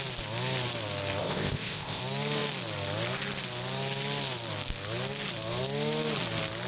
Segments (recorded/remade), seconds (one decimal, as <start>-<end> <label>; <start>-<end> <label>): 0.0-1.2 recorded; 1.2-2.0 remade; 2.0-6.7 recorded